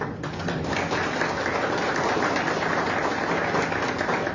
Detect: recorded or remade recorded